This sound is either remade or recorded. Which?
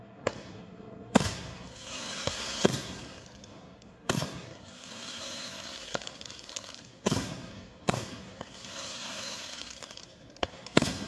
remade